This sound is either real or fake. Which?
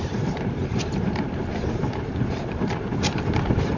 fake